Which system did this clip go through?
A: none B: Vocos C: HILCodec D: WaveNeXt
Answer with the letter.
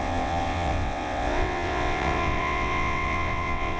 D